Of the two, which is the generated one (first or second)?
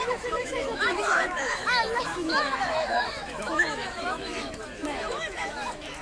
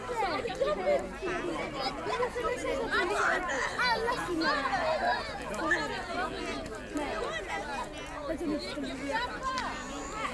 first